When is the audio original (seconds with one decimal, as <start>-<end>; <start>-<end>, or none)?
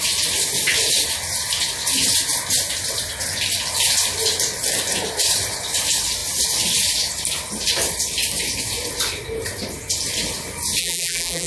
0.0-10.8